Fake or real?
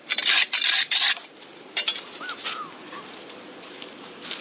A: real